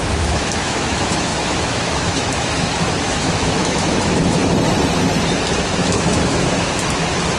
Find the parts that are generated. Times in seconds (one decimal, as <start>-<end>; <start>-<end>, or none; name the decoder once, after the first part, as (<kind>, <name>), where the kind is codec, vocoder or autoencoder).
0.0-4.4 (autoencoder, DAC-VAE); 5.6-7.4

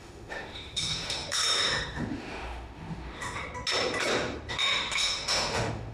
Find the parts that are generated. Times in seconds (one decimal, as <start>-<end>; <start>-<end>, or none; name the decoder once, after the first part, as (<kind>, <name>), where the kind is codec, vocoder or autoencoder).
0.0-3.4 (autoencoder, DAC-VAE); 4.5-5.9

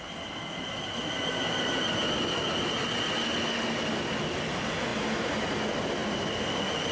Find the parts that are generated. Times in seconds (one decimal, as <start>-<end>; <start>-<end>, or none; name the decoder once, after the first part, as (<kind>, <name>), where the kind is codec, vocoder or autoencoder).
none

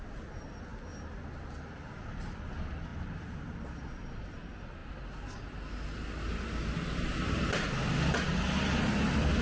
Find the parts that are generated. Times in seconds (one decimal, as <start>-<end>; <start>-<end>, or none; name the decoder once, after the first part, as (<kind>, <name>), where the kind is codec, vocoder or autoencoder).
none

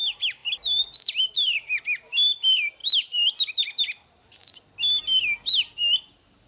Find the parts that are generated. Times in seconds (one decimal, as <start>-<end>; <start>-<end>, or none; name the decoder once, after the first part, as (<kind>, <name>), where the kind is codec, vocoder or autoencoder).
none

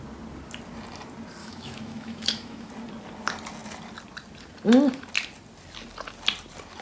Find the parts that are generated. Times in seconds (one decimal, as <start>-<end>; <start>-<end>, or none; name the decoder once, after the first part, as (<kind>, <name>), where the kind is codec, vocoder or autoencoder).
1.4-2.7 (autoencoder, DAC-VAE)

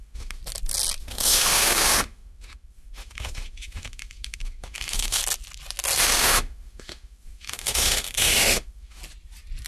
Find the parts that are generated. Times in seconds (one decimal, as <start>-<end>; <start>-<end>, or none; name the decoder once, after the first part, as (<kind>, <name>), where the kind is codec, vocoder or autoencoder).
0.0-0.4 (autoencoder, DAC-VAE); 1.0-5.2; 6.0-9.0